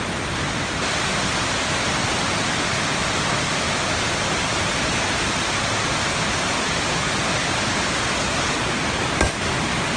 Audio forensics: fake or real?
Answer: real